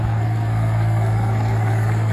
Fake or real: fake